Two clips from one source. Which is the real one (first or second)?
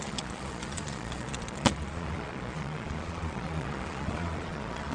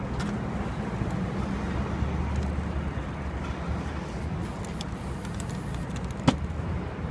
second